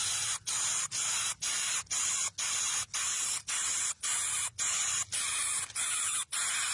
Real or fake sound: real